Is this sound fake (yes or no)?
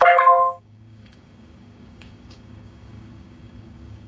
yes